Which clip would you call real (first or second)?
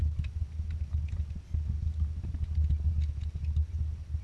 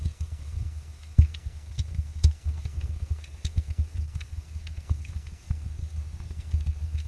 first